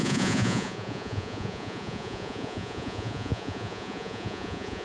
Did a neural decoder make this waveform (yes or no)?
yes